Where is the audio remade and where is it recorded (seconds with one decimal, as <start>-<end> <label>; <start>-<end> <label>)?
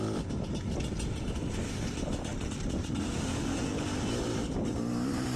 0.0-5.4 recorded